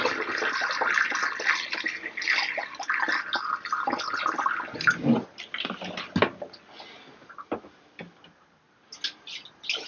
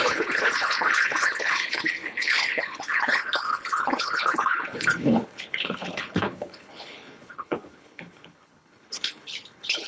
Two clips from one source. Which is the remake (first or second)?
second